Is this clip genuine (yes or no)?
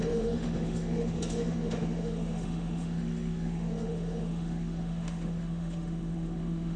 no